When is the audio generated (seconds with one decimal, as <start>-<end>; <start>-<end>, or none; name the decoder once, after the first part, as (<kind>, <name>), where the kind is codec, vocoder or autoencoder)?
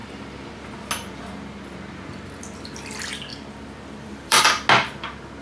3.3-4.4 (vocoder, BigVGAN v2)